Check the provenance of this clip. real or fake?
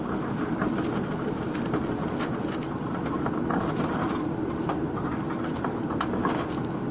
real